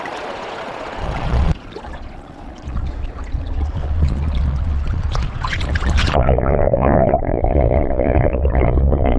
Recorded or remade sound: remade